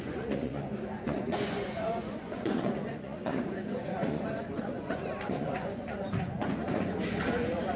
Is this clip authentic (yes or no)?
no